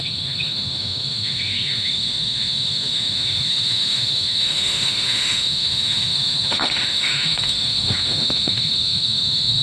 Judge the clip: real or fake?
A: fake